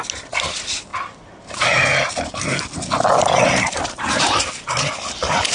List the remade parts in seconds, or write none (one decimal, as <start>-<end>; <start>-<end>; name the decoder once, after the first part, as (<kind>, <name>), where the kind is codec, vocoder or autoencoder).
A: none

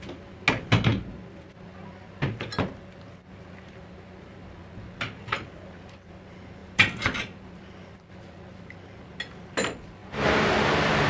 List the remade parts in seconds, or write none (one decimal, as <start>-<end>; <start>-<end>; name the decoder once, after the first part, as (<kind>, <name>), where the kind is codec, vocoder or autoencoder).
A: 6.6-7.2 (vocoder, BigVGAN v2); 10.0-10.6

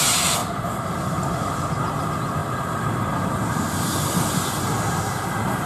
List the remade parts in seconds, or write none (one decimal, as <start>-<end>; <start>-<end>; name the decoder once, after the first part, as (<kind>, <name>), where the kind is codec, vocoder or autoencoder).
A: 0.0-0.4 (vocoder, BigVGAN v2); 1.1-5.7